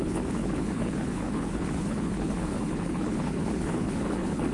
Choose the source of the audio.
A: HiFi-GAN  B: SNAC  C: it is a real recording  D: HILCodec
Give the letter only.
D